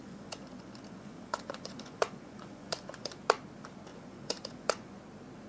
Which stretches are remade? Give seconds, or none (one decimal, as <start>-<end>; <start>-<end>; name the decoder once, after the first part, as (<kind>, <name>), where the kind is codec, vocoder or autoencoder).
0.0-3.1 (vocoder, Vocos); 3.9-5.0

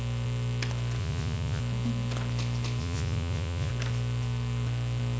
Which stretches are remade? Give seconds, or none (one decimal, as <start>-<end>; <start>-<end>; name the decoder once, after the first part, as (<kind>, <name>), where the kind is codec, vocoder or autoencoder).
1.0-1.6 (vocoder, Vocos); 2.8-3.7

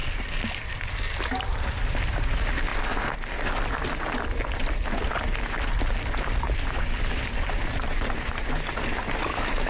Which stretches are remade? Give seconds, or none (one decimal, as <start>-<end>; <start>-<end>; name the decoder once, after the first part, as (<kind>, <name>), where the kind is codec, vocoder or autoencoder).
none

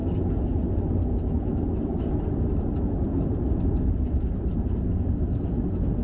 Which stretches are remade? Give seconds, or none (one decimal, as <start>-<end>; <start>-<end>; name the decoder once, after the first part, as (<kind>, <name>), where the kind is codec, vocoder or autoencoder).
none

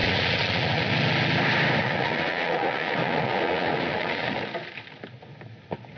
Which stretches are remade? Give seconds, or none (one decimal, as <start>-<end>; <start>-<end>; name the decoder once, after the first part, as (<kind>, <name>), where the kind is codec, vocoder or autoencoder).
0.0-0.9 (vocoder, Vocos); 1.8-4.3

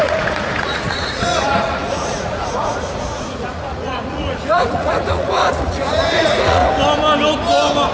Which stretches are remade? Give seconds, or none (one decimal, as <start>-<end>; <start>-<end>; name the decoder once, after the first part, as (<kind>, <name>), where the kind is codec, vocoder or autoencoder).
0.0-6.6 (vocoder, Vocos)

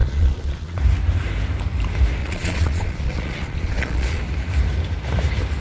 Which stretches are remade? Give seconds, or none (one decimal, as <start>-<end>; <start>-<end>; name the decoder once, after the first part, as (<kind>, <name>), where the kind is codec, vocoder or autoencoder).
0.0-0.8 (vocoder, Vocos); 2.2-4.2

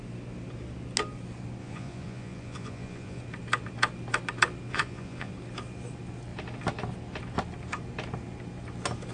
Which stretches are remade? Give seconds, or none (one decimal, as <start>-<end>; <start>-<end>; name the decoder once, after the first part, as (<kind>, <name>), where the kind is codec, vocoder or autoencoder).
1.6-3.2 (vocoder, Vocos); 4.7-5.3